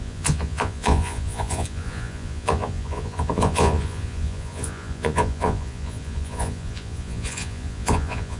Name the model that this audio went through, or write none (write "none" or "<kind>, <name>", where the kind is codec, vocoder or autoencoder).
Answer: vocoder, Vocos